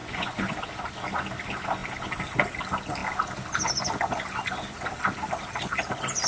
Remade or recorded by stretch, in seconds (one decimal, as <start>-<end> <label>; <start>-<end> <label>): 0.0-0.6 remade; 0.6-6.3 recorded